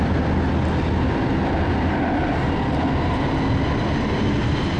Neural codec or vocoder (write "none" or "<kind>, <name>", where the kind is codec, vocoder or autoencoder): none